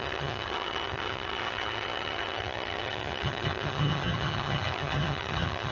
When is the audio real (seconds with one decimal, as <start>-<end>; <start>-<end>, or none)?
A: none